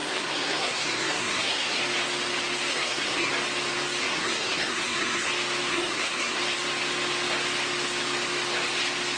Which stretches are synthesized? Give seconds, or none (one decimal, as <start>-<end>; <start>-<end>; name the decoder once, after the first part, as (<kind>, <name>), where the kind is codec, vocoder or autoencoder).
0.0-1.8 (codec, SNAC); 2.7-3.3; 4.0-5.3; 5.7-6.4